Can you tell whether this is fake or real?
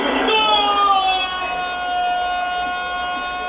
real